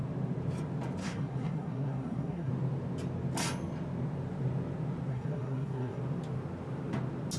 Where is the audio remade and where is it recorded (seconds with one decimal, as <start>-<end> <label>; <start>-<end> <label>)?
0.0-1.0 recorded; 1.0-2.5 remade; 2.5-5.1 recorded; 5.1-6.0 remade; 6.0-7.4 recorded